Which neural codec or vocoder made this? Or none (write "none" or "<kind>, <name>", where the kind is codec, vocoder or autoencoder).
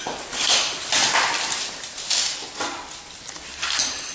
none